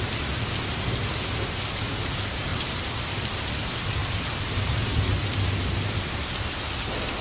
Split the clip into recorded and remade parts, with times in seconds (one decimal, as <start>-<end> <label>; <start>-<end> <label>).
0.0-2.5 recorded; 2.5-3.4 remade; 3.4-4.0 recorded; 4.0-5.0 remade; 5.0-7.2 recorded